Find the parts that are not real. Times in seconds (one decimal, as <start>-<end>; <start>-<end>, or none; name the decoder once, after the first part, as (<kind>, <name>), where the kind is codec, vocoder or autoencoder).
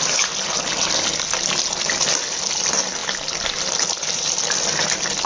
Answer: none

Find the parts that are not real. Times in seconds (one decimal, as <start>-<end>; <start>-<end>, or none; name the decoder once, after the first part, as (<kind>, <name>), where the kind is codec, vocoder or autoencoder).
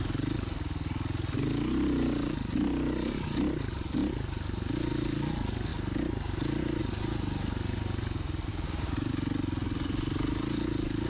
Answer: 8.5-9.1 (codec, DAC)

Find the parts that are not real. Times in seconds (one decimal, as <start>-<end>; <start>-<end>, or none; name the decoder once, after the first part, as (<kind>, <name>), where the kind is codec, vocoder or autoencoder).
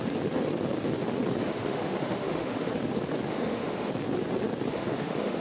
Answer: 1.4-2.7 (autoencoder, DAC-VAE); 3.3-3.9; 4.7-5.4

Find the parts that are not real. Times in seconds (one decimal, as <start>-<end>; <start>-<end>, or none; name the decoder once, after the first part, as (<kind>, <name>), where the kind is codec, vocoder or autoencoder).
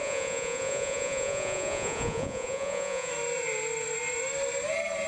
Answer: 0.0-3.1 (vocoder, Vocos)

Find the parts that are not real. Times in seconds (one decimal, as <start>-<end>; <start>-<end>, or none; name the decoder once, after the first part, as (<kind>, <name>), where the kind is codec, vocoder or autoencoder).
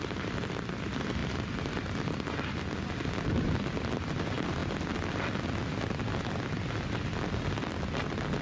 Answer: none